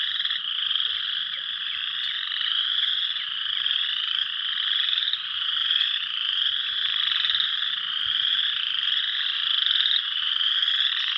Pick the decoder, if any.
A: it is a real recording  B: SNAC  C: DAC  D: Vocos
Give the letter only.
A